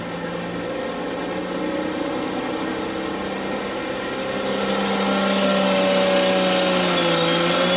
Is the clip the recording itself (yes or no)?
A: yes